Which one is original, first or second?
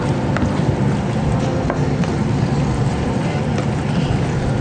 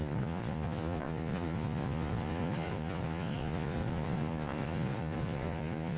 first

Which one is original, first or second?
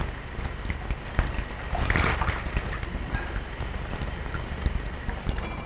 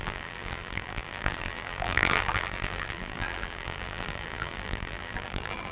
first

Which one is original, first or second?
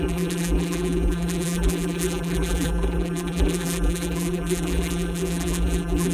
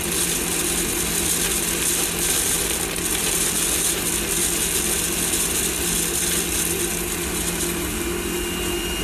second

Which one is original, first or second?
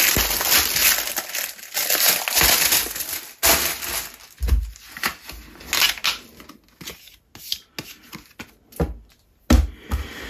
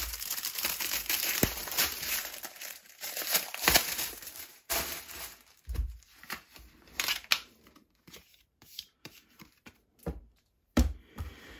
first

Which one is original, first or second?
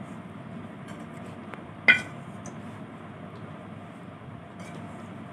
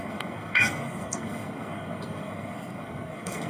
first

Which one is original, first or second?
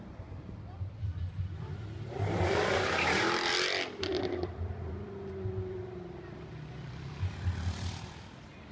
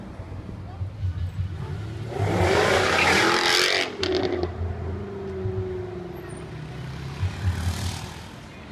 second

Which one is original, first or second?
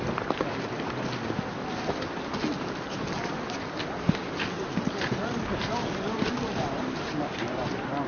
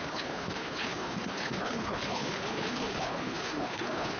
first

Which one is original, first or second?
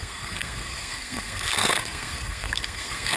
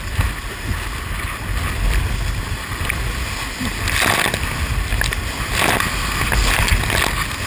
second